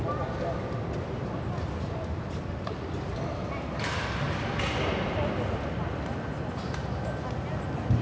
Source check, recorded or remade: recorded